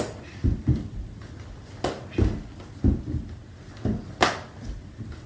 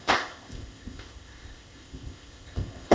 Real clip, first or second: first